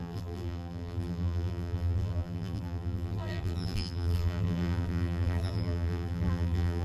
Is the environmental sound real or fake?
fake